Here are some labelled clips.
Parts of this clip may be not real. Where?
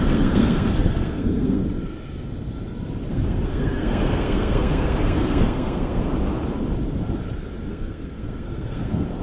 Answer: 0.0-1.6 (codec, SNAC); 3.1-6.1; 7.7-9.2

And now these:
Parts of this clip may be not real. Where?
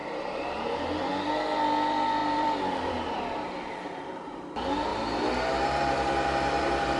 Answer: 0.0-1.1 (vocoder, BigVGAN v2); 2.2-3.2; 4.9-7.0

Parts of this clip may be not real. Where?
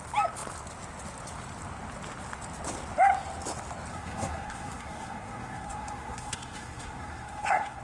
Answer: 3.9-7.8 (codec, SNAC)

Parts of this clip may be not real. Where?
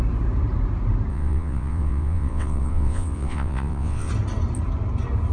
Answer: 1.1-4.1 (vocoder, WaveNeXt)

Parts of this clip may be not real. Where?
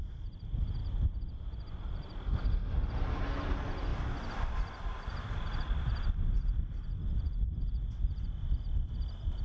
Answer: 3.9-8.6 (vocoder, BigVGAN v2)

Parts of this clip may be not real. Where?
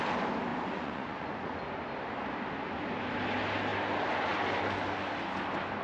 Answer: 0.5-1.5 (vocoder, Vocos)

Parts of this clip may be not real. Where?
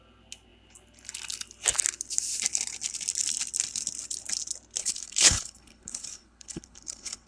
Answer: 4.8-7.3 (codec, HILCodec)